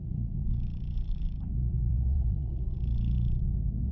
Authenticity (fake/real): fake